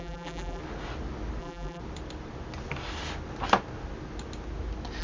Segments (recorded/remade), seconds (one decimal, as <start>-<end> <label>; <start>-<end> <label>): 0.0-0.6 remade; 0.6-1.4 recorded; 1.4-1.8 remade; 1.8-5.0 recorded